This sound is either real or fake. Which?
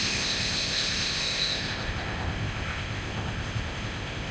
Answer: fake